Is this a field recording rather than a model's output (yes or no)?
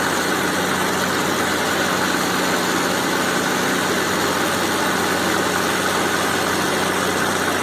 yes